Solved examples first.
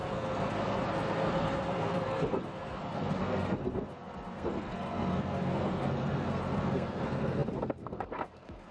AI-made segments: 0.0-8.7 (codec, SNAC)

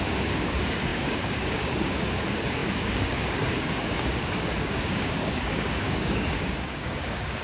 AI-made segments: 0.0-7.4 (codec, DAC)

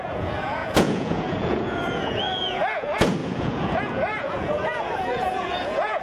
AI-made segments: 0.0-6.0 (vocoder, Vocos)

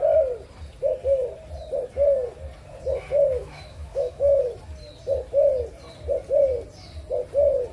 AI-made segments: 3.4-4.4 (autoencoder, DAC-VAE)